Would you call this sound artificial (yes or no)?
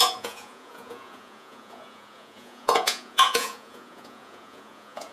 yes